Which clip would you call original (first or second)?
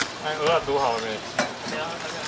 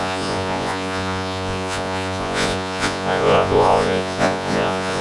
first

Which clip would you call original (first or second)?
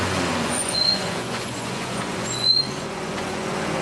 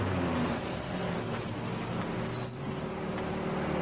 second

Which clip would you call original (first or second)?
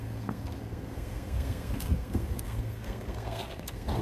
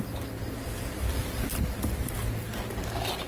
second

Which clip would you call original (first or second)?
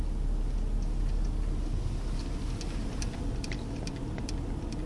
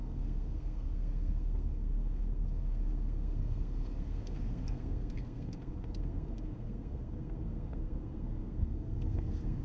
first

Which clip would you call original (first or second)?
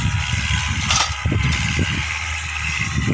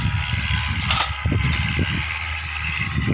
second